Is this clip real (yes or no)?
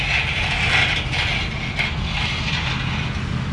yes